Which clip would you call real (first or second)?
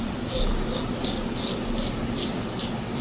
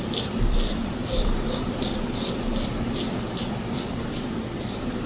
first